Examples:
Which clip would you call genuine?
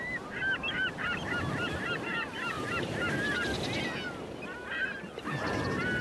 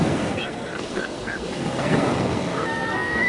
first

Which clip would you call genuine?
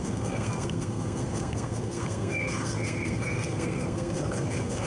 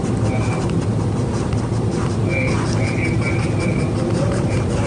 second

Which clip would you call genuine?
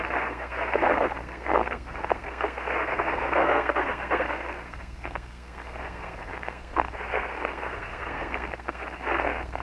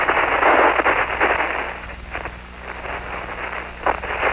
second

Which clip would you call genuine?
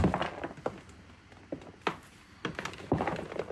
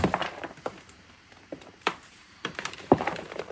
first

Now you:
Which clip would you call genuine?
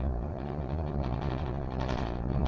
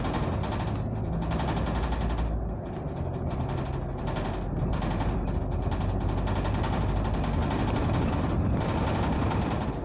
second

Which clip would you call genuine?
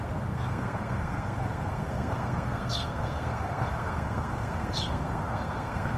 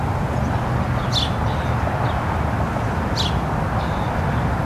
second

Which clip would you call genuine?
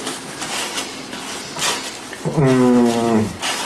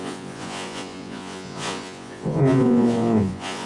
first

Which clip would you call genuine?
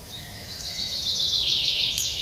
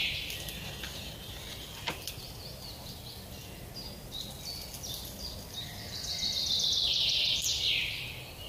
second